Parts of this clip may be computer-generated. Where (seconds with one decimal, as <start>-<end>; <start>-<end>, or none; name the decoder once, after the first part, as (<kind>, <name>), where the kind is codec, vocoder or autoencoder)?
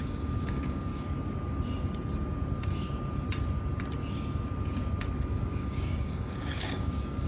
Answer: 0.0-0.9 (codec, DAC); 5.3-7.3